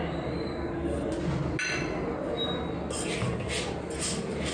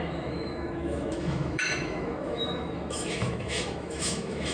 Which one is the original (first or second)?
first